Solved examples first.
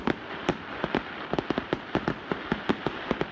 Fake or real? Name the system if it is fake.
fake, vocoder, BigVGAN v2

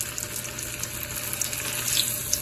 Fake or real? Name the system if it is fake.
real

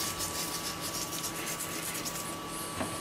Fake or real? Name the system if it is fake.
real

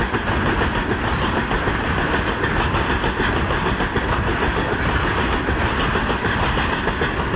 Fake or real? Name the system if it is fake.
real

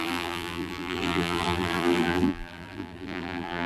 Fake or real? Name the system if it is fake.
fake, vocoder, BigVGAN v2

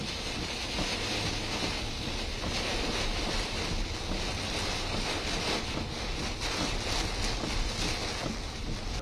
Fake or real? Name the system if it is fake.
real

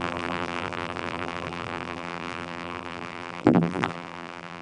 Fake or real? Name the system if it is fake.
fake, vocoder, BigVGAN v2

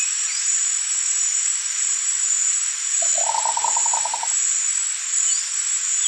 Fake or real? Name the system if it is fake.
fake, vocoder, BigVGAN v2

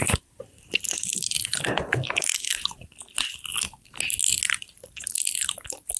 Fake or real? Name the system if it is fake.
fake, vocoder, BigVGAN v2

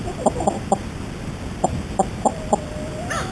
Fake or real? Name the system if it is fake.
fake, vocoder, BigVGAN v2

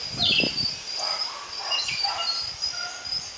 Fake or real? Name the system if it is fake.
real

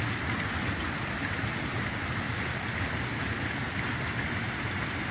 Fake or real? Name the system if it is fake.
real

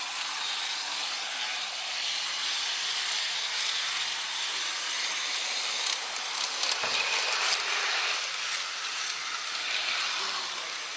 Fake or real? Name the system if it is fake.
real